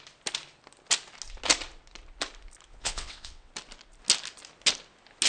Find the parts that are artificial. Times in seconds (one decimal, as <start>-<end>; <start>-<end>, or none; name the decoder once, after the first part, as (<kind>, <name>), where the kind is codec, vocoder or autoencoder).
2.7-3.5 (vocoder, WaveNeXt)